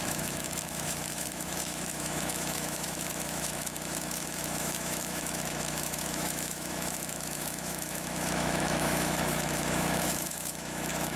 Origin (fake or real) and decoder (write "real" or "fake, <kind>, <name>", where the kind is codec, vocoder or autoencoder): fake, autoencoder, DAC-VAE